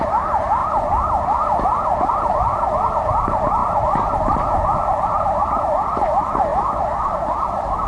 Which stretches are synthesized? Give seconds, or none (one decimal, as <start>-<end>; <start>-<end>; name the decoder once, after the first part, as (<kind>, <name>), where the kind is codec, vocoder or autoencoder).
none